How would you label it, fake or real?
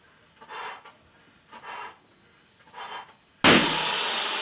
real